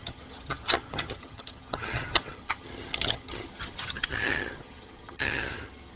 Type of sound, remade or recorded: remade